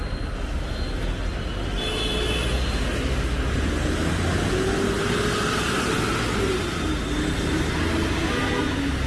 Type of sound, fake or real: real